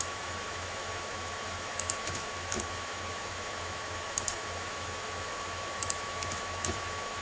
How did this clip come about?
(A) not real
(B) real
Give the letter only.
A